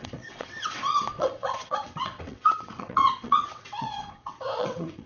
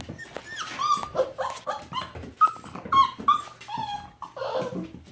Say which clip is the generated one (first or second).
first